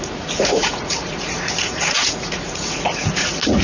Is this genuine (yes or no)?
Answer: no